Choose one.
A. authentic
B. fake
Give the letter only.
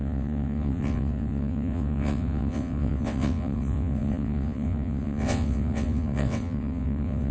B